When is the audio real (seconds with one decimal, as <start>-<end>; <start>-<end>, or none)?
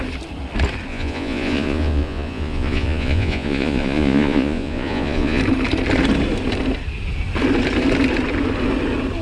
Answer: 0.0-0.9; 5.4-9.2